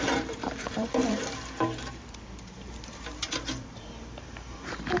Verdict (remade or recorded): remade